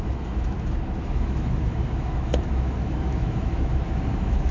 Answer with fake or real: fake